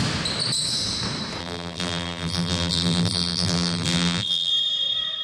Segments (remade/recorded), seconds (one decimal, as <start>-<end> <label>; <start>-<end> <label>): 0.0-1.4 recorded; 1.4-4.5 remade; 4.5-5.2 recorded